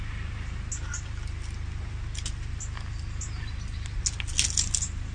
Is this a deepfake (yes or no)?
no